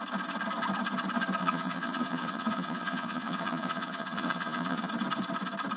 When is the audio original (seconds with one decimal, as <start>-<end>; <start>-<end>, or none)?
0.0-1.4; 4.9-5.8